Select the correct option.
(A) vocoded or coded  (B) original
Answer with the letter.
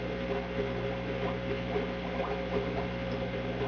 B